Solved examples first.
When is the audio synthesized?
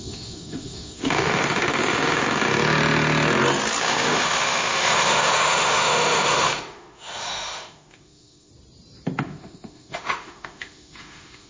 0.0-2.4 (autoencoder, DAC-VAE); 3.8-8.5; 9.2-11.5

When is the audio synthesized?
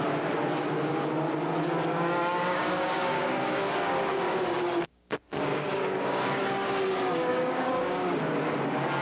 1.9-5.1 (codec, DAC); 5.5-6.4; 7.3-8.2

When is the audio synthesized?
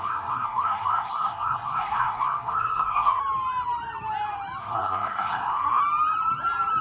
0.0-3.2 (codec, SNAC); 4.6-5.8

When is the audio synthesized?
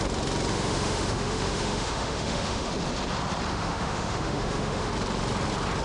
0.5-2.7 (autoencoder, DAC-VAE); 3.5-4.9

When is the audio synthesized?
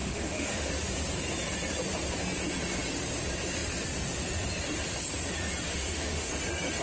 0.0-0.7 (autoencoder, DAC-VAE); 5.7-6.3